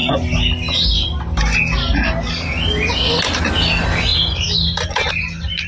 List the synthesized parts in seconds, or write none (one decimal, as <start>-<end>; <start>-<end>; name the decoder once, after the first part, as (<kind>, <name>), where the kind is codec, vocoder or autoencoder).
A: 3.4-4.1 (vocoder, BigVGAN v2); 5.1-5.7